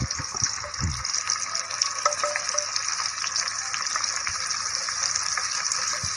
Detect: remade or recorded recorded